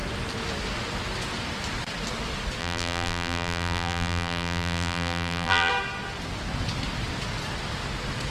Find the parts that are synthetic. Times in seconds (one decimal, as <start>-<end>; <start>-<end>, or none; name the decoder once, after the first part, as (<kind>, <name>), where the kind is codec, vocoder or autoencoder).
2.6-5.7 (vocoder, BigVGAN v2)